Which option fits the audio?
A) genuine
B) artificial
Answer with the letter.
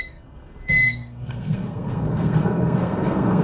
B